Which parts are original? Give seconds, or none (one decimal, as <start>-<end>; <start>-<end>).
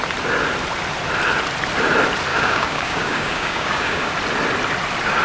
0.0-2.3; 4.1-5.2